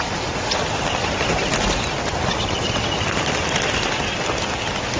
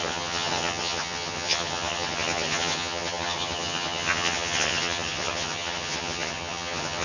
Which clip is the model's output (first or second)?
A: second